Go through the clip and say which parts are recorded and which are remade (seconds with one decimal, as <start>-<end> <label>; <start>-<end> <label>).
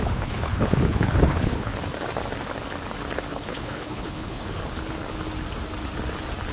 0.0-1.7 remade; 1.7-3.3 recorded; 3.3-4.6 remade; 4.6-6.5 recorded